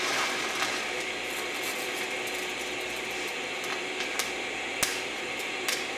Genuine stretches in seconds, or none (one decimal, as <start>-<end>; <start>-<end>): 0.0-6.0